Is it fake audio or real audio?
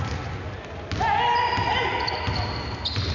real